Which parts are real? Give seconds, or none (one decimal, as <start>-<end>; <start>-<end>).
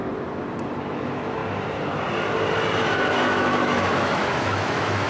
0.0-0.8; 1.4-3.1